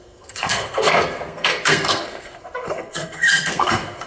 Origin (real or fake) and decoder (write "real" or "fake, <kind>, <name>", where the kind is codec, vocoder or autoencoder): fake, codec, SNAC